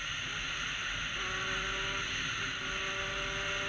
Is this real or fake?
real